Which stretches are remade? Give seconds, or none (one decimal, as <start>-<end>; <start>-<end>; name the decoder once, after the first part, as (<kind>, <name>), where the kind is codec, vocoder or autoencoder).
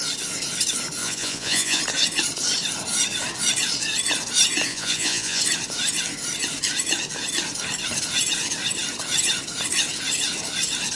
1.0-1.8 (vocoder, Vocos); 4.7-5.4